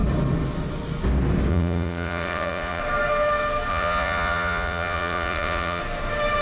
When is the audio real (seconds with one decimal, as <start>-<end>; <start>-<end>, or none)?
0.0-1.5; 2.8-3.7; 5.8-6.4